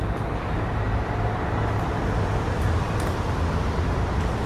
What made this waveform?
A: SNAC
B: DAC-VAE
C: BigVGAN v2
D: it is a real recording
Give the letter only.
D